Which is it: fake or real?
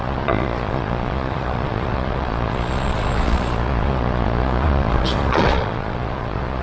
fake